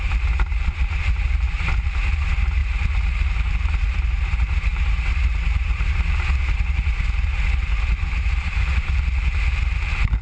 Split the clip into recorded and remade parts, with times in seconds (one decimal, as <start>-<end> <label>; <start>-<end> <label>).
0.0-2.6 remade; 2.6-3.1 recorded; 3.1-10.2 remade